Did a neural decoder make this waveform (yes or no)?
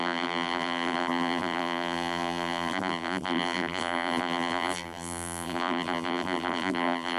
yes